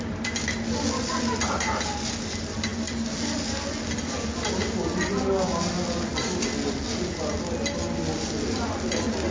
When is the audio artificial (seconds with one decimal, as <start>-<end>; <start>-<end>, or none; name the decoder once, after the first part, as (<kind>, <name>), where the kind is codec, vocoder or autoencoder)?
none